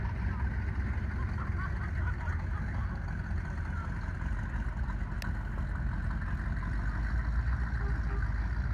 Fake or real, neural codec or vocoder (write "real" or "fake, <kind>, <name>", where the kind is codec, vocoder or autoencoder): real